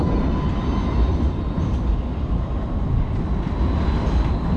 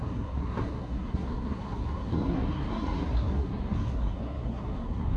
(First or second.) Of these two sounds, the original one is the first